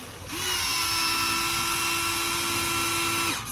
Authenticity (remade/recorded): recorded